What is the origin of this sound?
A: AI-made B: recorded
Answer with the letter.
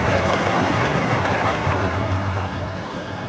A